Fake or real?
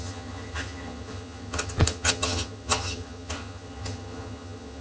fake